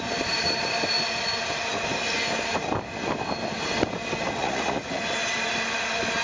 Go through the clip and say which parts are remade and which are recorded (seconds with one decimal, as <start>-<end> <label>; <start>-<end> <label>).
0.0-4.4 recorded; 4.4-5.0 remade; 5.0-6.2 recorded